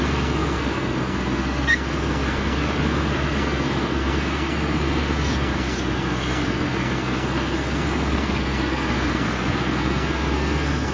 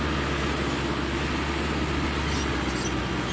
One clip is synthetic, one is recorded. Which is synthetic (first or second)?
first